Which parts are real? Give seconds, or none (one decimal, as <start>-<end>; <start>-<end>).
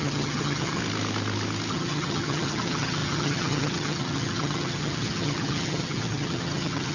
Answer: 0.8-1.7